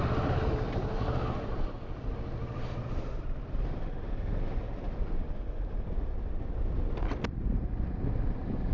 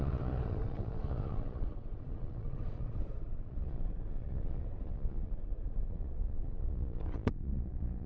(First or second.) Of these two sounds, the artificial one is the second